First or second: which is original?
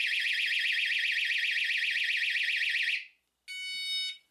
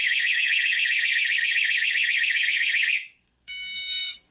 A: first